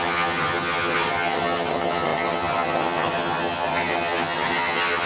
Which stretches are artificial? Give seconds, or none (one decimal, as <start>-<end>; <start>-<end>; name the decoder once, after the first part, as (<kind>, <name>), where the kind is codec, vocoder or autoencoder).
0.0-5.1 (vocoder, HiFi-GAN)